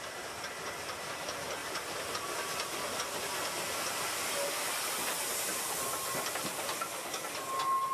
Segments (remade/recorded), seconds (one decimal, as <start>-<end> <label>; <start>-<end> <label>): 0.0-1.6 recorded; 1.6-4.9 remade; 4.9-7.9 recorded